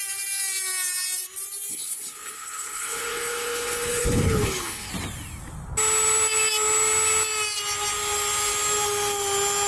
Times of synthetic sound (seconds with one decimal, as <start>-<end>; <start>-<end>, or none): 1.7-4.9